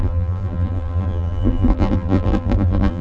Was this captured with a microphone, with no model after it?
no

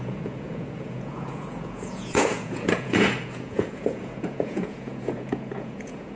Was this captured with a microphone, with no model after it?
no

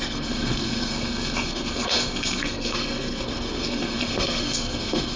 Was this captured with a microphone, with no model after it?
no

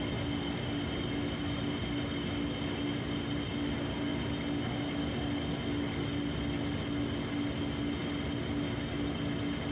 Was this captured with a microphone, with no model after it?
yes